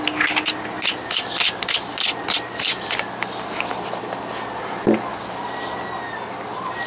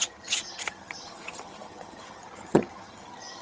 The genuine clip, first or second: first